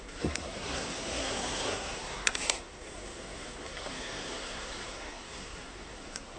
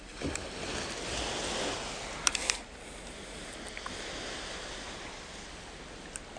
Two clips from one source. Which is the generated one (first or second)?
first